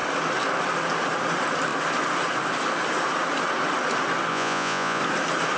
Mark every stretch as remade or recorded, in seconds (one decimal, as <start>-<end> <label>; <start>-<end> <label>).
0.0-4.3 recorded; 4.3-5.0 remade; 5.0-5.6 recorded